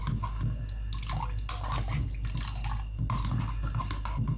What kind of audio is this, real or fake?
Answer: real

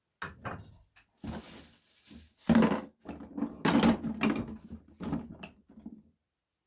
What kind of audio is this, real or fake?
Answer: real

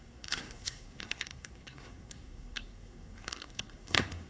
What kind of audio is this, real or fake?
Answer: fake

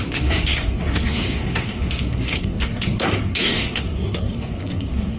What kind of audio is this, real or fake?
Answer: fake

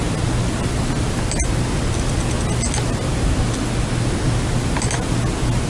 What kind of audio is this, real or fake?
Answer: real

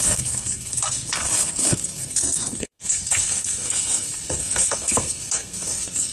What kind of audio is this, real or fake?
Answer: fake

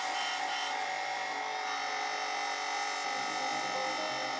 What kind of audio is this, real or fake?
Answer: real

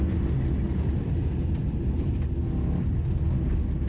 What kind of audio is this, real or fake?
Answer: real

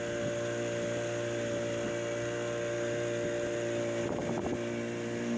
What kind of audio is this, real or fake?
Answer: real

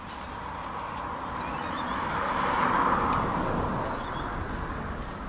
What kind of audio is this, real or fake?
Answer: real